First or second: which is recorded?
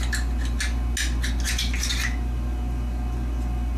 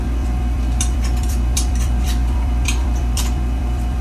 first